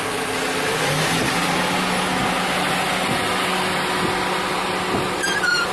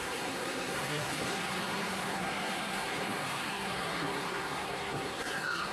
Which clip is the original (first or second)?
first